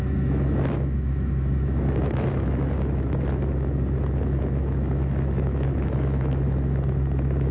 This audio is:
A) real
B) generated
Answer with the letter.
B